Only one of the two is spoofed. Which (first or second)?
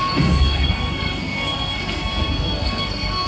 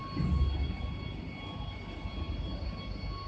first